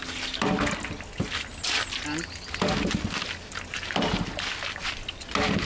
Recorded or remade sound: recorded